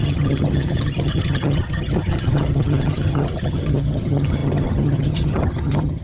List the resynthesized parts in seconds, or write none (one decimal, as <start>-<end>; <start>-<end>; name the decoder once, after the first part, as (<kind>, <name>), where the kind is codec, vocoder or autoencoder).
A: 0.0-6.0 (vocoder, HiFi-GAN)